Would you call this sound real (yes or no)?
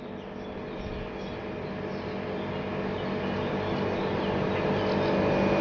yes